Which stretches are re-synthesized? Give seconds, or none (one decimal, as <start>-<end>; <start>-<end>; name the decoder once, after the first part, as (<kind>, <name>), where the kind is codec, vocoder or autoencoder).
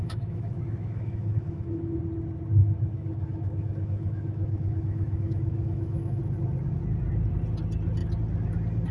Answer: 0.0-2.0 (autoencoder, DAC-VAE); 2.6-6.2